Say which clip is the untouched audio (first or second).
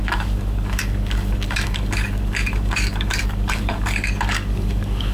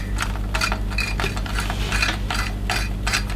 second